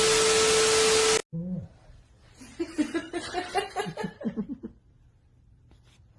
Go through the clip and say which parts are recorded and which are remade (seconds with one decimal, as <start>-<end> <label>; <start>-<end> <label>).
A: 0.0-6.2 recorded